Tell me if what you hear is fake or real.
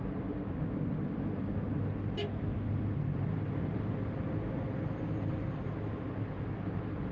real